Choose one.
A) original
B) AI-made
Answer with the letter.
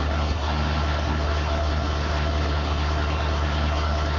B